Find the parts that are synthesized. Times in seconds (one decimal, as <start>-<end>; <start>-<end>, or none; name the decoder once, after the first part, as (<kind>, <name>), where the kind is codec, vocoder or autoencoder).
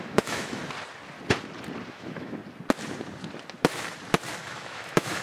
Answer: 0.0-0.6 (autoencoder, DAC-VAE); 1.9-2.4; 4.4-5.2